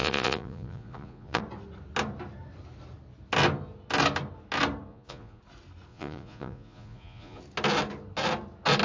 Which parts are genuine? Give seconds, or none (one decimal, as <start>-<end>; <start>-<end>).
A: 1.4-4.9; 5.4-5.9; 7.4-8.8